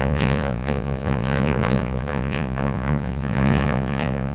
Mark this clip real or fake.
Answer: fake